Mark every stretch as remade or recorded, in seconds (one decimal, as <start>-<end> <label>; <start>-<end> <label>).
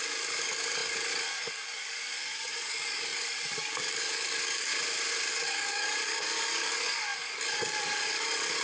0.0-4.7 remade; 4.7-5.3 recorded; 5.3-8.6 remade